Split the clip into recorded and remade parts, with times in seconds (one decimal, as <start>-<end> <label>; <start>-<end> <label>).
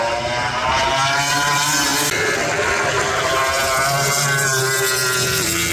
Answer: 0.0-5.7 recorded